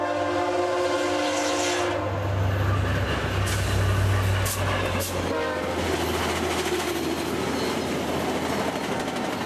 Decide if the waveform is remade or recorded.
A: recorded